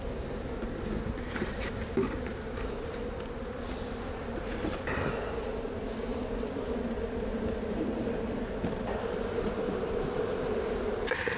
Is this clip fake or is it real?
fake